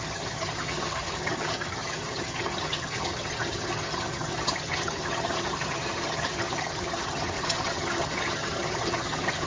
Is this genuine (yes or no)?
no